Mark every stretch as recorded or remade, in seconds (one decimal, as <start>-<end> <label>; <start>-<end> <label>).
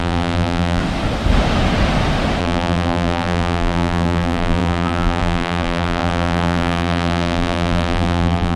0.0-0.8 remade; 0.8-2.4 recorded; 2.4-8.6 remade